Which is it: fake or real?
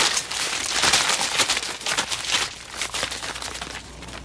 real